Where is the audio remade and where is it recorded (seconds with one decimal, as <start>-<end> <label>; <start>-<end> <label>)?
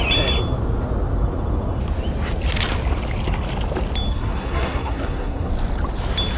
0.0-4.1 recorded; 4.1-5.5 remade; 5.5-6.4 recorded